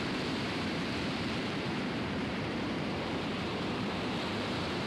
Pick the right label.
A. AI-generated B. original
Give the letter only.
A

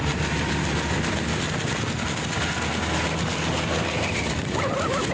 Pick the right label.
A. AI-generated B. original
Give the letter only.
B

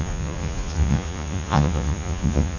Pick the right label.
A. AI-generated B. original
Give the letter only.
A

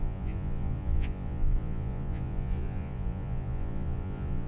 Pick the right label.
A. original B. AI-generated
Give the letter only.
B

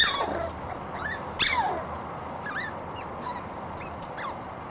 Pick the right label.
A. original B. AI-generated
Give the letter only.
A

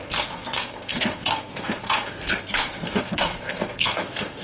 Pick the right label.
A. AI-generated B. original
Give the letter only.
A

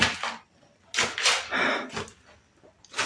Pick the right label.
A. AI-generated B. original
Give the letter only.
B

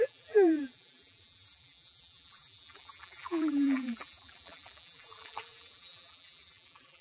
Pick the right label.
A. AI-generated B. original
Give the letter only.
A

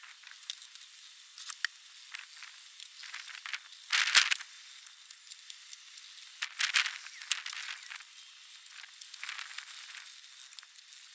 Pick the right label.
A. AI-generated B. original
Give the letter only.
B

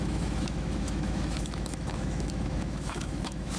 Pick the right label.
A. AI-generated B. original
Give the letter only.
A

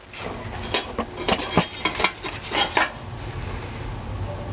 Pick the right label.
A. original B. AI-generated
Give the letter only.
A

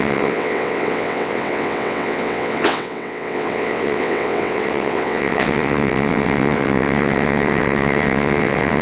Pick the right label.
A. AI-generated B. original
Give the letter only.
A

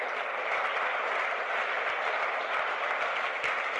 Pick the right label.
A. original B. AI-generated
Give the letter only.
A